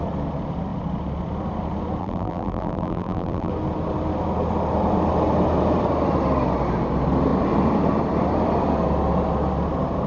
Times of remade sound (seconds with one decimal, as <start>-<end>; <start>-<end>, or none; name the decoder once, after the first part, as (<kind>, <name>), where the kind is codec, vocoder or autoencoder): 2.0-3.5 (vocoder, BigVGAN v2)